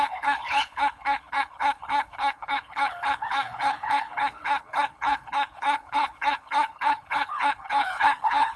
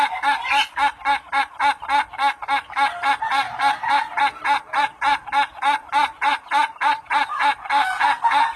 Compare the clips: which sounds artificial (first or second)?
first